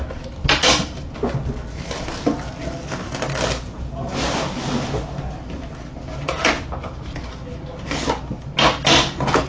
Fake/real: real